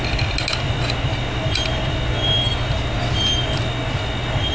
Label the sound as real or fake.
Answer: real